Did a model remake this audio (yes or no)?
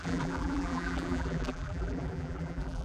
yes